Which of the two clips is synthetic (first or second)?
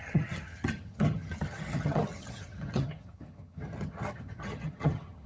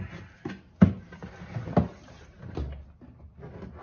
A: first